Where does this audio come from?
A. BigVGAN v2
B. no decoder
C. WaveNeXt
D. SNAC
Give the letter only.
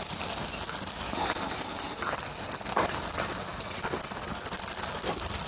B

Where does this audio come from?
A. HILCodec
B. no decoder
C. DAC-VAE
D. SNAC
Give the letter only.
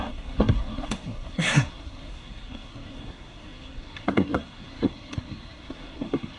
D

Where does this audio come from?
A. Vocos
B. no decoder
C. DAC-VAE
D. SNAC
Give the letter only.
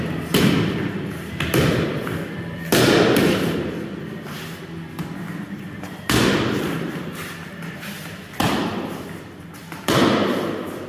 B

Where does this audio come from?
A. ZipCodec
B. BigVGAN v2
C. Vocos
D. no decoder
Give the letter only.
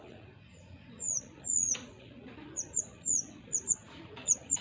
C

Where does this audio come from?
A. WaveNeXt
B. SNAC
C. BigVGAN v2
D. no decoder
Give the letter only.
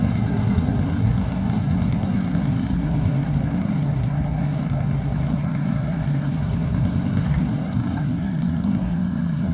B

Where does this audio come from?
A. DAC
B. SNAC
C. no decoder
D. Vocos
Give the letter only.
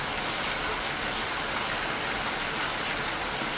C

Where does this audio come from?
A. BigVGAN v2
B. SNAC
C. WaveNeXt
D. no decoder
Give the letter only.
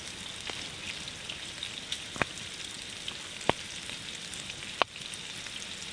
D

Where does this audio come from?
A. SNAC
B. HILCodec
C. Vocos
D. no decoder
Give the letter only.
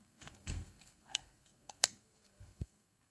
A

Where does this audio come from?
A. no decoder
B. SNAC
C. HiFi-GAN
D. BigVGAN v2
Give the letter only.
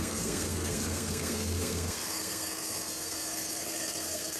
B